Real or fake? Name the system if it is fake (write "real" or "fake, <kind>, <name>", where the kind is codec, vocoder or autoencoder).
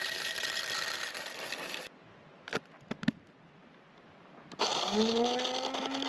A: real